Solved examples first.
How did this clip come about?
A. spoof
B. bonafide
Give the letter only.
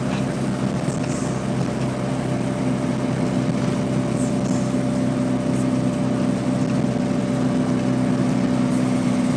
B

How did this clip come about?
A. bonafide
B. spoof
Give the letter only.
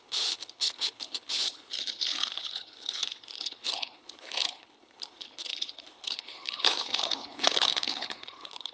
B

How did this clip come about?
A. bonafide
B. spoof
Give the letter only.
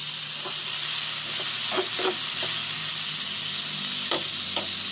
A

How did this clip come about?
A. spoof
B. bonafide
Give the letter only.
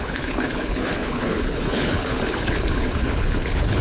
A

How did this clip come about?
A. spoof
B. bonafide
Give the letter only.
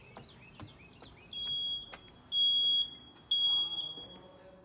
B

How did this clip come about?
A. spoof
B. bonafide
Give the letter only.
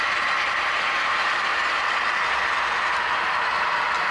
B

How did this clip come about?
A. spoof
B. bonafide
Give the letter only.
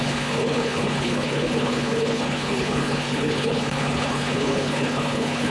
A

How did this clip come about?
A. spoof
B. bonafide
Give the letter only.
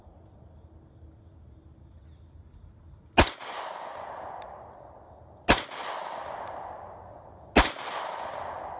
B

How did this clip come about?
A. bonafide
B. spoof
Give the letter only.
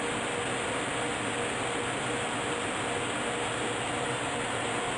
A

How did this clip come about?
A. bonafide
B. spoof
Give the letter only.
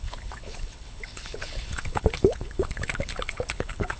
B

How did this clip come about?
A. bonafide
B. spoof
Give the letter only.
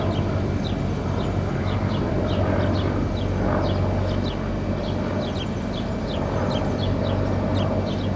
A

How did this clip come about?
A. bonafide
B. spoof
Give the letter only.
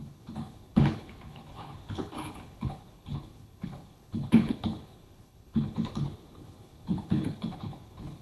B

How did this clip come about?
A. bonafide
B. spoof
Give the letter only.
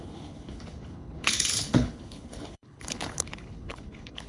B